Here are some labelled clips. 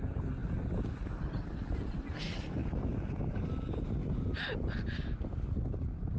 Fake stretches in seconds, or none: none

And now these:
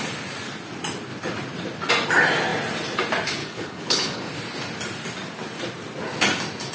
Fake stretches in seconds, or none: 3.4-4.2 (codec, HILCodec)

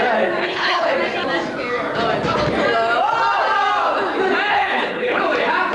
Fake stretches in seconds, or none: 0.4-0.9 (codec, HILCodec); 4.5-5.2

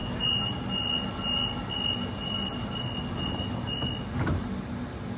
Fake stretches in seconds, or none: none

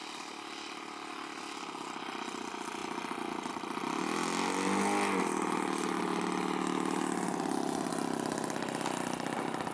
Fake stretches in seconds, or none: none

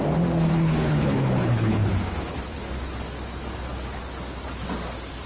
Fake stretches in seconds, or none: 0.5-2.7 (codec, HILCodec)